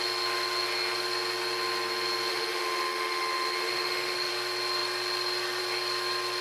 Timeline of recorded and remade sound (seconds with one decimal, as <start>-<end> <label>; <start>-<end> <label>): 0.0-2.3 recorded; 2.3-4.3 remade; 4.3-6.4 recorded